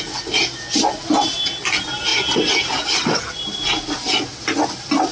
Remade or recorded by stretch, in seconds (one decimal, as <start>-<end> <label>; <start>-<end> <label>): 0.0-5.1 recorded